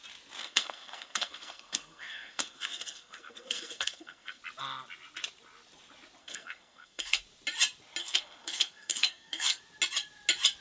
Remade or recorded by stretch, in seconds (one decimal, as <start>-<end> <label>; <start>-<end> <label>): 0.0-0.4 recorded; 0.4-4.4 remade; 4.4-6.2 recorded; 6.2-7.2 remade; 7.2-8.0 recorded; 8.0-9.6 remade; 9.6-10.6 recorded